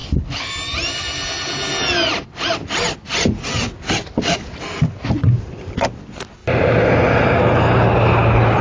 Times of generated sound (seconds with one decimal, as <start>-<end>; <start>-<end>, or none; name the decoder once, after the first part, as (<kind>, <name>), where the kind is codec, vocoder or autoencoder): 0.0-0.5 (codec, HILCodec)